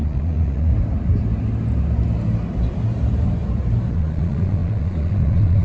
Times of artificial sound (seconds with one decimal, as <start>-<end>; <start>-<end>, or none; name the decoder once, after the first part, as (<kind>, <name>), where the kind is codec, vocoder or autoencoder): 0.0-0.7 (vocoder, Vocos); 3.9-5.6